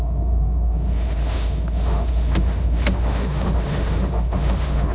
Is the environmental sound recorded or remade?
remade